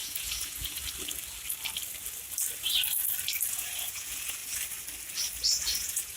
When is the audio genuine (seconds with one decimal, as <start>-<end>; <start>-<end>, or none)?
0.8-3.5; 4.4-5.4